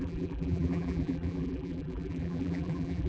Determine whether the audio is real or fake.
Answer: fake